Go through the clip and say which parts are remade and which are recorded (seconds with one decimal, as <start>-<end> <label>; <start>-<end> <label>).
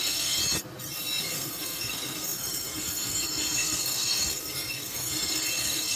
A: 0.0-0.4 remade; 0.4-1.2 recorded; 1.2-6.0 remade